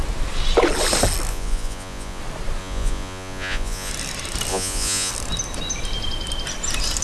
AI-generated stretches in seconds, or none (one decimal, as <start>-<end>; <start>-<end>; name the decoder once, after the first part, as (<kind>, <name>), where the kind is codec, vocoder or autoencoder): 1.3-2.2 (vocoder, Vocos); 2.6-3.9; 4.5-5.1